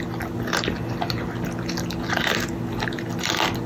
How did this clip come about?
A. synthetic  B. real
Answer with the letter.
B